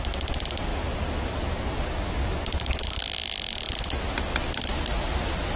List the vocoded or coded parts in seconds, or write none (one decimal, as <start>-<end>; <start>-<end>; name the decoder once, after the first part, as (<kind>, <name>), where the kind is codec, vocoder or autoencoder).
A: 0.7-3.0 (vocoder, BigVGAN v2)